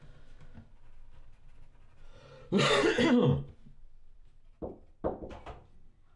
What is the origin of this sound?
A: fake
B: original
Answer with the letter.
B